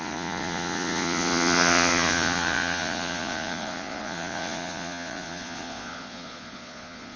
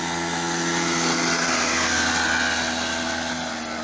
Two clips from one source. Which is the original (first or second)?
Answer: second